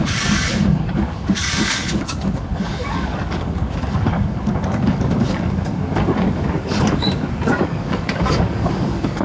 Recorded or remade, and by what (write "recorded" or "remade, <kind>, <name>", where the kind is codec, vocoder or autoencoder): remade, codec, DAC